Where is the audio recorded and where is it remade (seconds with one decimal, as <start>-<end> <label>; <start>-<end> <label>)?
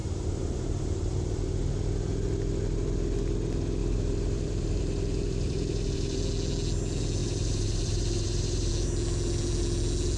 0.0-1.4 remade; 1.4-3.8 recorded; 3.8-6.2 remade; 6.2-7.2 recorded; 7.2-8.7 remade; 8.7-10.2 recorded